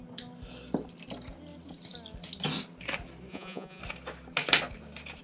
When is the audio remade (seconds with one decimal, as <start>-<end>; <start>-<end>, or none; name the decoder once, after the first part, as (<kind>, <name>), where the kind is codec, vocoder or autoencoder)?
3.3-3.8 (vocoder, Vocos)